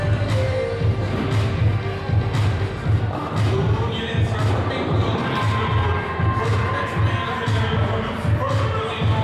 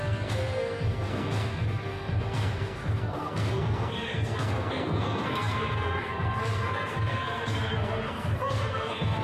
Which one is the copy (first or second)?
second